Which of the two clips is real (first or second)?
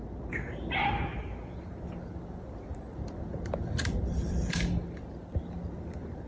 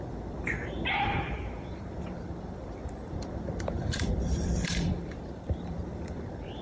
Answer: first